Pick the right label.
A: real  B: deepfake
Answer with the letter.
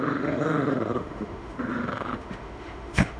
B